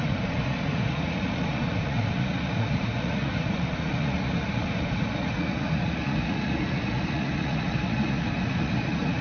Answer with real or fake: fake